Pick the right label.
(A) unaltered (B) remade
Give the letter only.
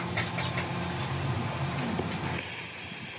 A